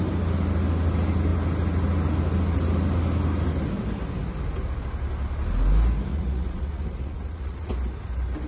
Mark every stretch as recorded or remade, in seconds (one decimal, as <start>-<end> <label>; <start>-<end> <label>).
0.0-6.1 recorded; 6.1-7.7 remade; 7.7-8.5 recorded